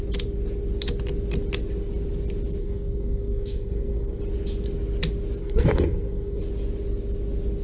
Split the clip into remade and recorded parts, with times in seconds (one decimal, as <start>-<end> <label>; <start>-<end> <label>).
0.0-2.6 recorded; 2.6-4.2 remade; 4.2-5.4 recorded; 5.4-6.4 remade; 6.4-7.6 recorded